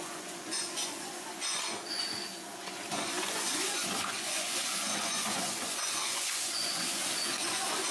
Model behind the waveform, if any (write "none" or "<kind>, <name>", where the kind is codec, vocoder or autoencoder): vocoder, Vocos